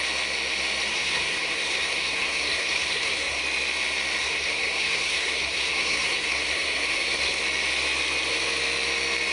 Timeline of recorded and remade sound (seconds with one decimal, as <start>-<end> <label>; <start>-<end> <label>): 0.0-0.9 recorded; 0.9-3.4 remade; 3.4-4.2 recorded; 4.2-7.4 remade; 7.4-9.3 recorded